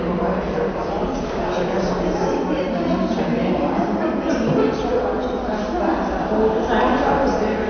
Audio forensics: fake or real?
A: real